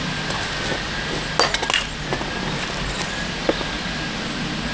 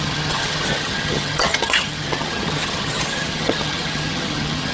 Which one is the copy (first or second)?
second